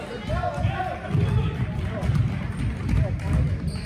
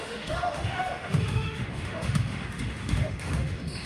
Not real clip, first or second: second